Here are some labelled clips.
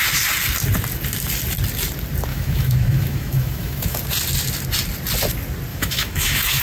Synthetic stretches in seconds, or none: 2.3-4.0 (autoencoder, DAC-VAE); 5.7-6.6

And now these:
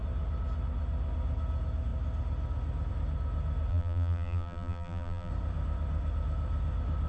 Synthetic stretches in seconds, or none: 3.7-5.3 (vocoder, BigVGAN v2)

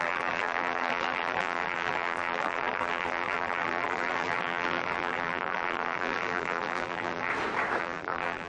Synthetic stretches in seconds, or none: 0.0-7.3 (vocoder, BigVGAN v2); 7.8-8.5

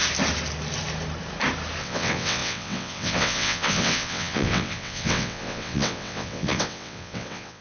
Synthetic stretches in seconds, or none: 1.8-7.6 (vocoder, WaveNeXt)

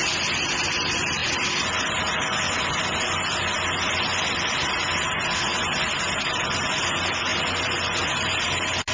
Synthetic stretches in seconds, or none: none